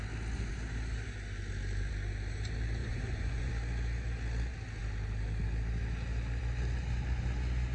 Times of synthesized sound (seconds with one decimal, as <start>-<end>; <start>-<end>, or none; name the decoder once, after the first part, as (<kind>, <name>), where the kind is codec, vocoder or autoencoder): 2.8-3.5 (vocoder, Vocos)